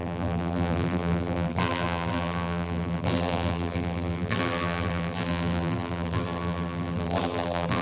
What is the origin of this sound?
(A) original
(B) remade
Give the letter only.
B